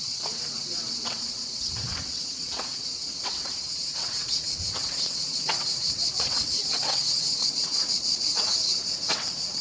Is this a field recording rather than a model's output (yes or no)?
no